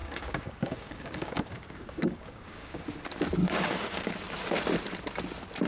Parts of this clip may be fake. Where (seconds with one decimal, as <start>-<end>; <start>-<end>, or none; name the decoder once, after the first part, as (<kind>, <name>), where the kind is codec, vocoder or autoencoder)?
0.0-2.8 (codec, DAC); 3.4-4.1